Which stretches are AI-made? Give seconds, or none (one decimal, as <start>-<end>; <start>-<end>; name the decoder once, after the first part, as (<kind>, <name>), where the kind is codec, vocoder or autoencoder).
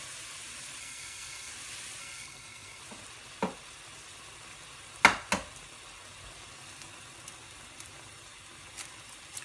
0.8-1.5 (codec, SNAC); 2.0-2.8